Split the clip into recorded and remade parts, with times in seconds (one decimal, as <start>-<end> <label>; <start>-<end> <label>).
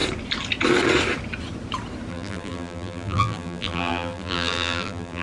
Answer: 0.0-2.1 recorded; 2.1-5.2 remade